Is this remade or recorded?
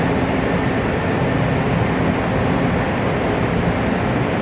recorded